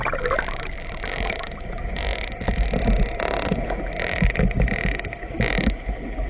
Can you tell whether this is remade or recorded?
recorded